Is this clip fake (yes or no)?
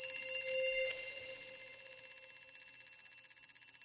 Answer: no